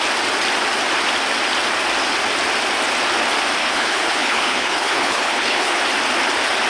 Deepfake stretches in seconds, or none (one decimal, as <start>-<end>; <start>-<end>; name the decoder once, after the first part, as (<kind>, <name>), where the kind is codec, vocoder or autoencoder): 3.6-5.8 (codec, HILCodec)